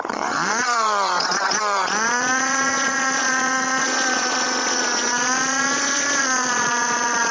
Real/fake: fake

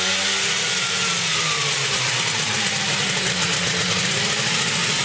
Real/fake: real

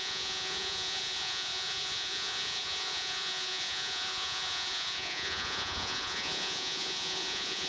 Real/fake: fake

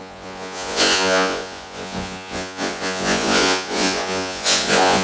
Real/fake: fake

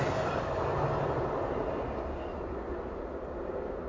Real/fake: real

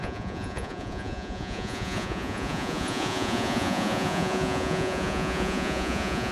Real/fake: fake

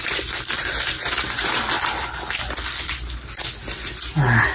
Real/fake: real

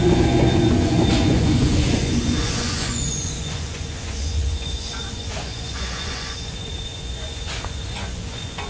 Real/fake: fake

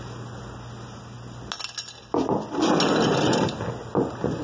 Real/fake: real